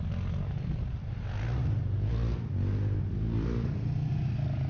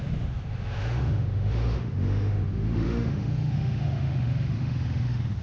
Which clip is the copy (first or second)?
second